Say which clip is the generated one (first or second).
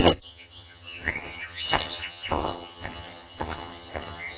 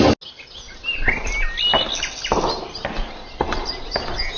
first